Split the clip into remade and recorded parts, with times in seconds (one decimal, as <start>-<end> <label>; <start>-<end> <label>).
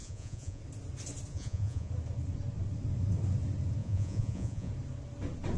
0.0-0.6 remade; 0.6-1.3 recorded; 1.3-1.9 remade; 1.9-3.8 recorded; 3.8-4.7 remade; 4.7-5.6 recorded